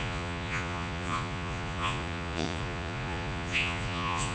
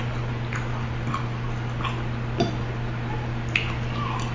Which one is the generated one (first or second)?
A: first